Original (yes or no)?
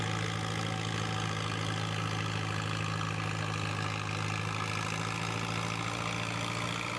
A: yes